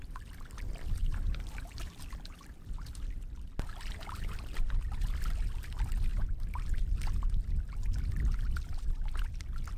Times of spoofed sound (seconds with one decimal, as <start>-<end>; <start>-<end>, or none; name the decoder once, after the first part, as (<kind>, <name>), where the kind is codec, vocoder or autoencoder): none